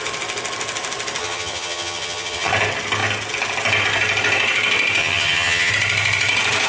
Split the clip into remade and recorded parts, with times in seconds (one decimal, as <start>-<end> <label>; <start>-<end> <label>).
0.0-1.2 recorded; 1.2-2.5 remade; 2.5-5.0 recorded; 5.0-5.7 remade; 5.7-6.7 recorded